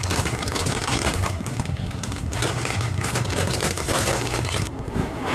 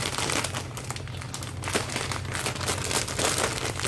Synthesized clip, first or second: first